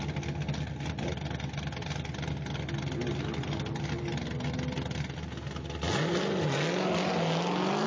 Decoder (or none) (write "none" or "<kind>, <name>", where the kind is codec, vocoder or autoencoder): none